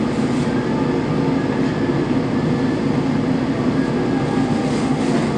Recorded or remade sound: recorded